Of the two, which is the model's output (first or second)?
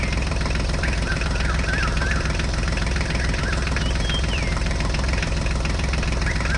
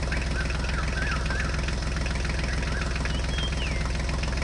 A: first